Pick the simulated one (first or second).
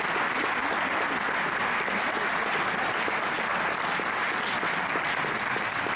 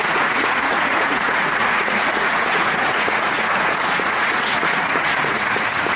second